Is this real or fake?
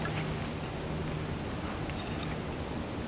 real